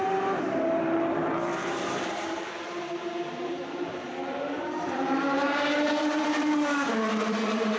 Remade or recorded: remade